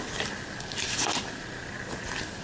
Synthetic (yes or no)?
no